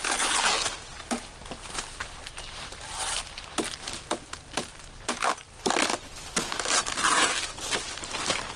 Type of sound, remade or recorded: remade